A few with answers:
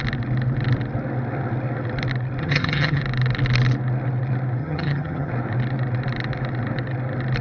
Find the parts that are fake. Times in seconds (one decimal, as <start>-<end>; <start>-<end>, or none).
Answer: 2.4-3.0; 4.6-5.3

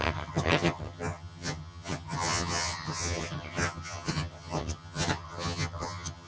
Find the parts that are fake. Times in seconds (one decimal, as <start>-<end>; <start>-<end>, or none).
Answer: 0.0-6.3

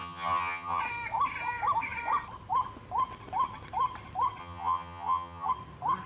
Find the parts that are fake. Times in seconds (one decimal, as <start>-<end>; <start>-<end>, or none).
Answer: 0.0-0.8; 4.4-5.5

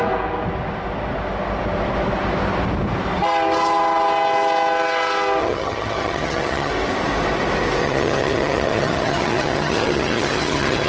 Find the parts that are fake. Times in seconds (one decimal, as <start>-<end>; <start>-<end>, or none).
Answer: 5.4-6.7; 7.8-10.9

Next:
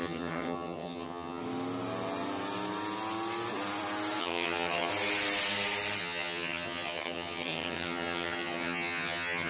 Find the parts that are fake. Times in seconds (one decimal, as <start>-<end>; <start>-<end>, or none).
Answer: 0.0-1.4; 4.2-4.9; 6.0-9.5